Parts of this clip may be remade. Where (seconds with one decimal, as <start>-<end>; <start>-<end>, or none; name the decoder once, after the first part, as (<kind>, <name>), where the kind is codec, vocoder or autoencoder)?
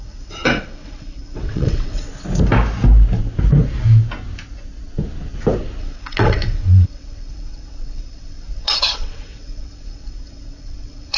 0.0-2.1 (vocoder, WaveNeXt); 5.8-11.2